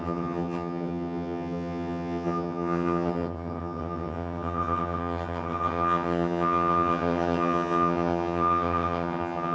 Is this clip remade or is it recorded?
remade